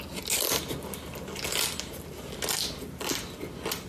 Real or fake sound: real